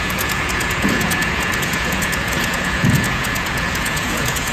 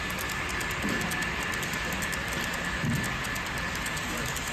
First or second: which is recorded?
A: second